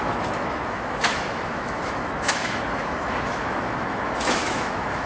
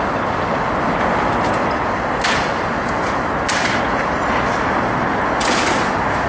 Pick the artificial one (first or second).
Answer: first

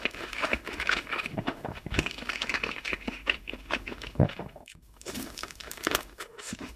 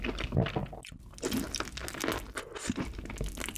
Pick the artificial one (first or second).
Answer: first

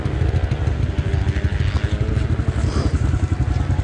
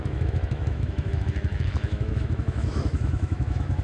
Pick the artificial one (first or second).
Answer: second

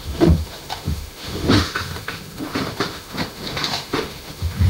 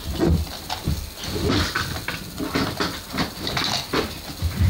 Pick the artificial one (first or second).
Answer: first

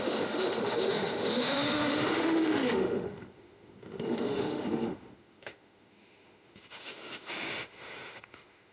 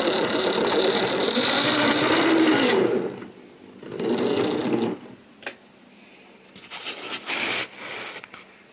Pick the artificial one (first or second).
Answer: first